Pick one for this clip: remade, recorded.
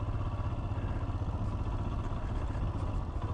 recorded